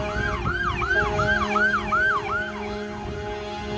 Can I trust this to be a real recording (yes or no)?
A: yes